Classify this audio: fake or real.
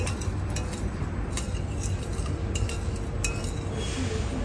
real